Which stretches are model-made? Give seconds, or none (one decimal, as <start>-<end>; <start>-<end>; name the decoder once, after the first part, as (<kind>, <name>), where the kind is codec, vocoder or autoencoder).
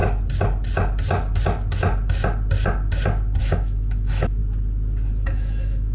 3.4-4.4 (autoencoder, DAC-VAE); 5.1-5.9